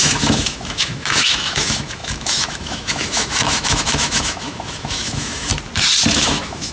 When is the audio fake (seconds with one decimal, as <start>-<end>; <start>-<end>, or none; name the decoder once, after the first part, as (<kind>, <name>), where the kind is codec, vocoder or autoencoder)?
0.0-5.5 (autoencoder, DAC-VAE); 6.1-6.7